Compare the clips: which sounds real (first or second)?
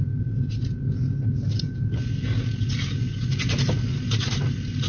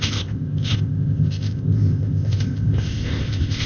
first